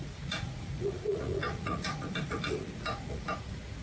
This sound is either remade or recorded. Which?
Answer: remade